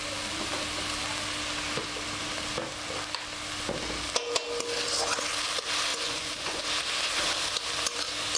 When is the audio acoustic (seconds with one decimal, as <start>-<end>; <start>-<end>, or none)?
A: 0.0-5.9; 6.6-8.4